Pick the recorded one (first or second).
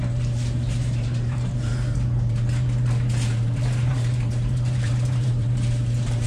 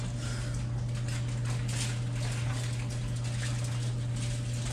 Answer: second